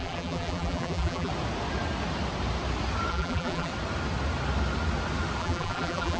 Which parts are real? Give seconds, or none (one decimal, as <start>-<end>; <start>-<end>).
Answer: 1.3-3.1; 3.7-5.4